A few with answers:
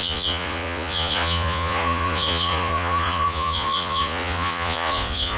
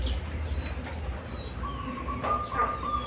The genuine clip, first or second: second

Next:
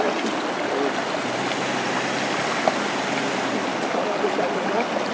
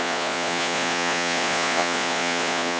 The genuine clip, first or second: first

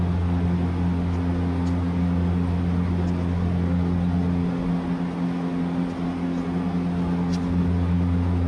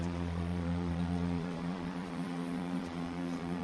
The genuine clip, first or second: first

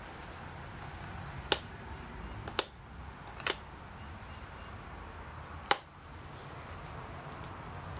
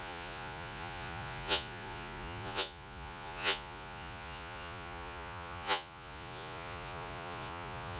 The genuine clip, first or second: first